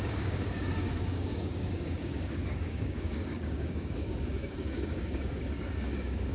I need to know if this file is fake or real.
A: fake